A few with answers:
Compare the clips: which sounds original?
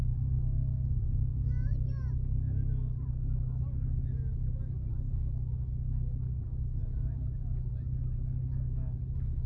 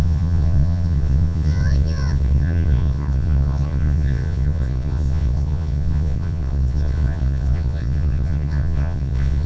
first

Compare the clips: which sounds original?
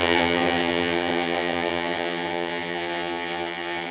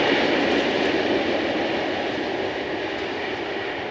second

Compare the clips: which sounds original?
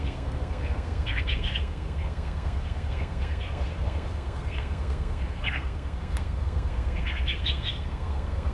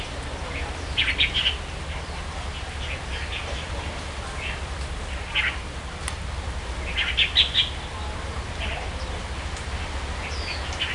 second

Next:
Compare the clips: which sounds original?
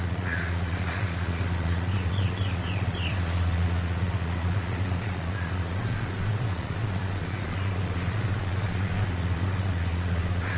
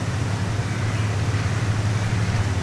second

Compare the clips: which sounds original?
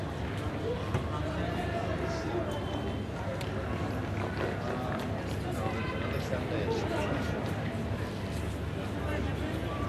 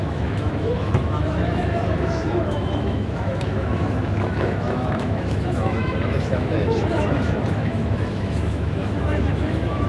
first